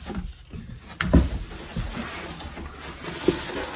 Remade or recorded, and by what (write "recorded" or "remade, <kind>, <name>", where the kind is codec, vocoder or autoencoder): recorded